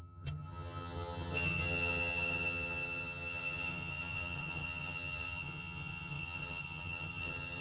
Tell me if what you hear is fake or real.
fake